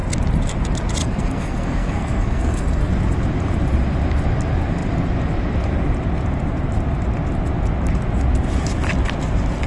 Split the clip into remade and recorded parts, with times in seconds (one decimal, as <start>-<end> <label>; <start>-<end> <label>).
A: 0.0-1.0 recorded; 1.0-2.9 remade; 2.9-9.7 recorded